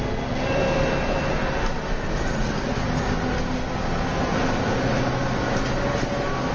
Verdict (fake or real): real